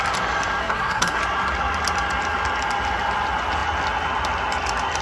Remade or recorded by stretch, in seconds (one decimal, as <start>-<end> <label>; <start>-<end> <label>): 0.0-0.6 recorded; 0.6-1.2 remade; 1.2-5.0 recorded